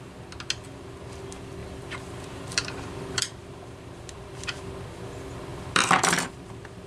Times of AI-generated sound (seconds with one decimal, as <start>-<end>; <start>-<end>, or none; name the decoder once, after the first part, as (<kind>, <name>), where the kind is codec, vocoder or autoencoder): 1.6-5.1 (vocoder, BigVGAN v2); 5.5-6.5